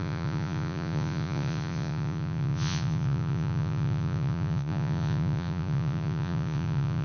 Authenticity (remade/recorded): remade